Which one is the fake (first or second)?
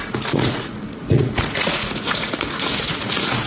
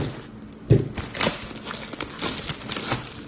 first